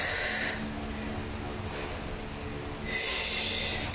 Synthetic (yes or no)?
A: no